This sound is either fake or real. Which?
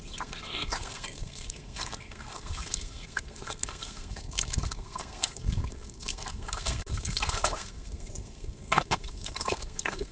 fake